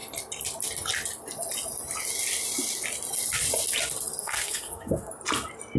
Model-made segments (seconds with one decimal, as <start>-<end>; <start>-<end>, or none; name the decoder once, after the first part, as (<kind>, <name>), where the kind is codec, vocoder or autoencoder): 4.2-5.1 (codec, SNAC)

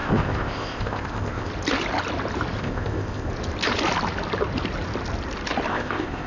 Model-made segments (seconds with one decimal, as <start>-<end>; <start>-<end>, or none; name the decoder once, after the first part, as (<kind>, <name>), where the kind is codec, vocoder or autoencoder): 0.0-1.5 (codec, ZipCodec); 2.6-3.3; 5.7-6.3

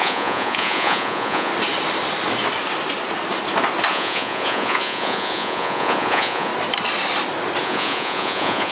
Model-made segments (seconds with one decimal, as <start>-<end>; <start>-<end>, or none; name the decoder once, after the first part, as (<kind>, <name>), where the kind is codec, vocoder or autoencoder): 0.0-1.5 (vocoder, Vocos); 3.9-6.5; 7.6-8.7

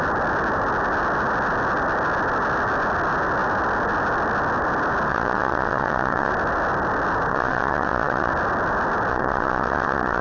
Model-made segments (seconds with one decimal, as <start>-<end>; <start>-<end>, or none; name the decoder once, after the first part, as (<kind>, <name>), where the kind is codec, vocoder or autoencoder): 5.1-6.3 (vocoder, WaveNeXt); 7.3-8.3; 9.1-10.2

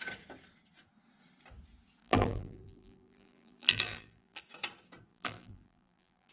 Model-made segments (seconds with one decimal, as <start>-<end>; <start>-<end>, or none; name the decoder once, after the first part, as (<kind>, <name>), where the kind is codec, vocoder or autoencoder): 2.0-4.4 (vocoder, BigVGAN v2); 5.1-6.3

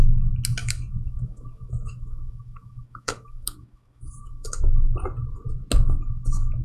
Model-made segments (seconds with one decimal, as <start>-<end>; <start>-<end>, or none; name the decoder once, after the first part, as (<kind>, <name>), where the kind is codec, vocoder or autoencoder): 0.6-4.6 (autoencoder, DAC-VAE)

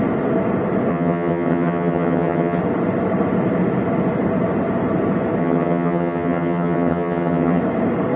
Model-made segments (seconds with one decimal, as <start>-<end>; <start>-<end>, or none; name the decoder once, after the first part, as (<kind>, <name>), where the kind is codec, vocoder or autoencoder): 0.9-2.6 (vocoder, HiFi-GAN); 5.4-7.6